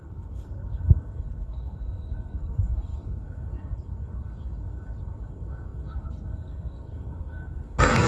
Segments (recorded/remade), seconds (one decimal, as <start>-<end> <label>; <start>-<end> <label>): 0.0-8.1 remade

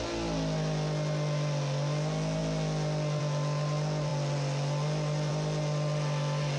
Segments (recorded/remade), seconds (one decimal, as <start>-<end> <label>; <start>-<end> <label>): 0.0-6.6 recorded

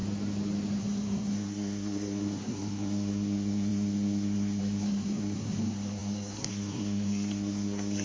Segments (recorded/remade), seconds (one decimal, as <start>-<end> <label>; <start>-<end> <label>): 0.0-0.8 recorded; 0.8-8.0 remade